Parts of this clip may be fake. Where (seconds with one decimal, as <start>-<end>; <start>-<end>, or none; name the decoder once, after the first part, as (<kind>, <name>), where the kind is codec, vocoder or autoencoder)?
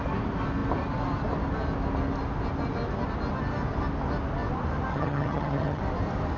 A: 4.9-5.8 (vocoder, HiFi-GAN)